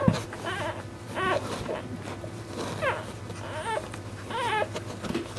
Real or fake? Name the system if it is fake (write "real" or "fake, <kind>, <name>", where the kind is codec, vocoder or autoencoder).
real